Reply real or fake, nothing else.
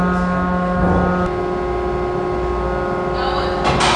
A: real